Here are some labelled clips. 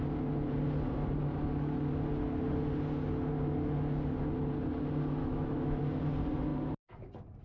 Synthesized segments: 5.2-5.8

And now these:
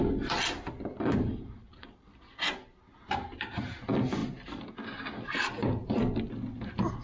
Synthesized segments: none

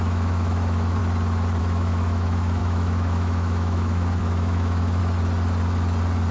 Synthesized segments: 0.0-1.0; 1.6-5.0

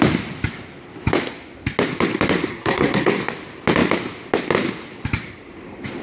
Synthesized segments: 2.5-3.2

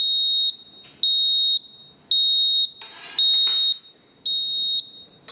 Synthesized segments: none

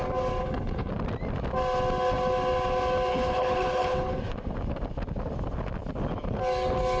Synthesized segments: 0.4-0.9; 3.1-4.2

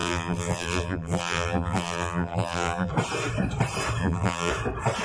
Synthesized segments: 0.0-2.9; 4.0-4.5